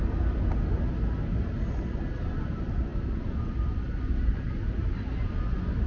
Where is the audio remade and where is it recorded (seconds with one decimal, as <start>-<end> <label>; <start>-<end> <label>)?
0.0-5.9 recorded